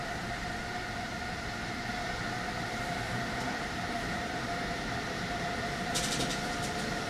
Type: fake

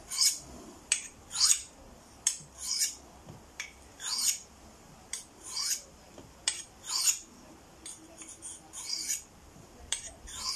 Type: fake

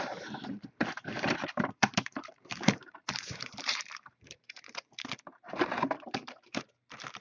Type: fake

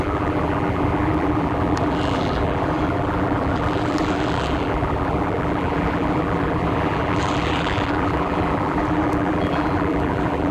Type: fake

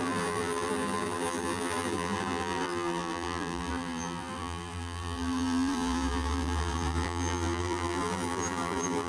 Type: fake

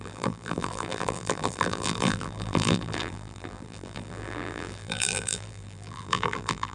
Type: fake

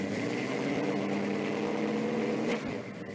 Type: real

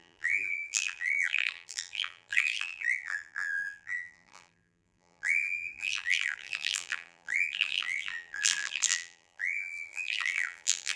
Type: fake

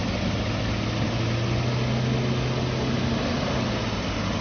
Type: real